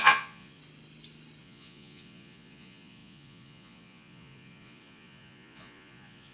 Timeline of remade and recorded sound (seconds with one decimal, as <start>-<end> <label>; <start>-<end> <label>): 0.0-0.6 remade; 0.6-1.4 recorded; 1.4-6.3 remade